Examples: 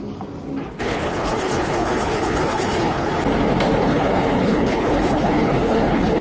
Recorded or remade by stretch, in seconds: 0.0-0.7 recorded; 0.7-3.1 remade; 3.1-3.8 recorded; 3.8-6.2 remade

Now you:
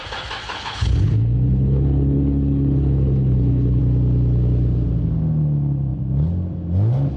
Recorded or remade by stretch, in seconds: 0.0-0.4 recorded; 0.4-3.8 remade; 3.8-7.2 recorded

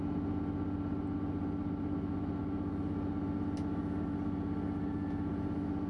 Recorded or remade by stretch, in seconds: 0.0-5.9 recorded

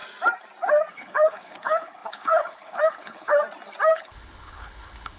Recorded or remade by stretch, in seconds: 0.0-0.9 recorded; 0.9-3.4 remade; 3.4-3.9 recorded; 3.9-5.2 remade